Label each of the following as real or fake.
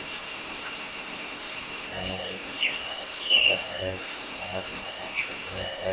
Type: fake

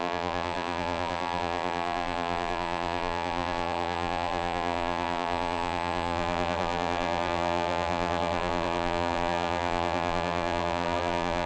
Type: fake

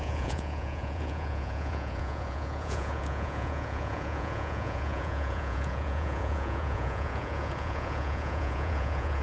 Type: fake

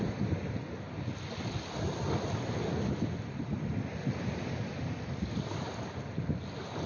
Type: real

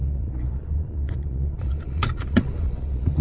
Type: fake